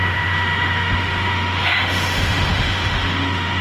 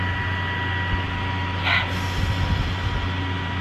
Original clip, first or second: second